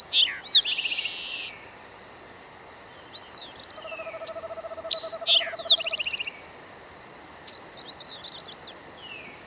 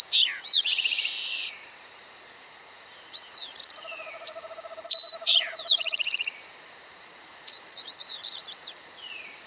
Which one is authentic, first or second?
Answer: first